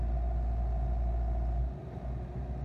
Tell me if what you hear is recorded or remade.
recorded